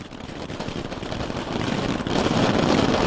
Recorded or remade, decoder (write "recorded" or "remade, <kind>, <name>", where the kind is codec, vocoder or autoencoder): recorded